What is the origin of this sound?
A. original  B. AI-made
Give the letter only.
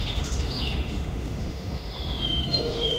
B